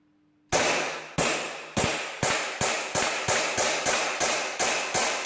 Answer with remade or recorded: recorded